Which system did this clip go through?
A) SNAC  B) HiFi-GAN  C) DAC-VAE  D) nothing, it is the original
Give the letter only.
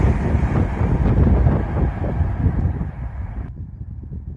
D